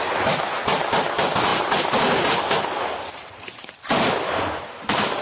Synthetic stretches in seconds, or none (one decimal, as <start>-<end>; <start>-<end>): none